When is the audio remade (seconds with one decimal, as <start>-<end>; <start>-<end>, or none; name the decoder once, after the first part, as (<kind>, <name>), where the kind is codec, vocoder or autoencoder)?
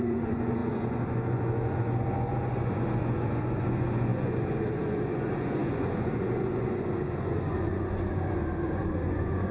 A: 0.0-9.5 (vocoder, Vocos)